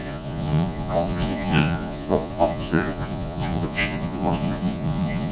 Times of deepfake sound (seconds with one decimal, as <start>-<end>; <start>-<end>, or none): 0.0-5.3